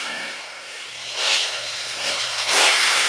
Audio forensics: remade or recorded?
remade